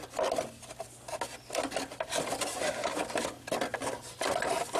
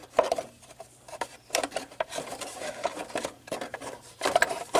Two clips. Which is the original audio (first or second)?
first